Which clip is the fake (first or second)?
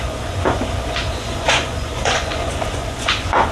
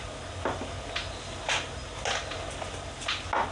first